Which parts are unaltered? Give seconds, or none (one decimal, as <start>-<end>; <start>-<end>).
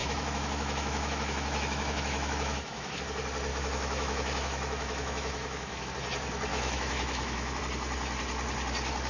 3.0-3.5; 5.9-6.5; 7.6-9.1